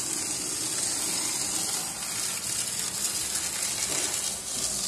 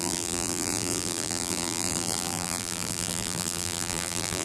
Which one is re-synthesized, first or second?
second